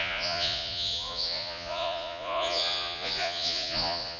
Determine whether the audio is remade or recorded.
remade